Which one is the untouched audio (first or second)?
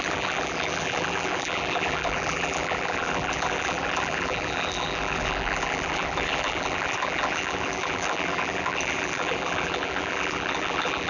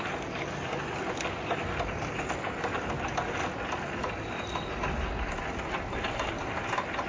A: second